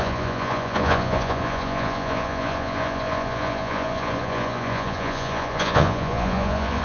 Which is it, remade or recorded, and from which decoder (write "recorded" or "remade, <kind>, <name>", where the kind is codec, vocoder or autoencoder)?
remade, vocoder, Vocos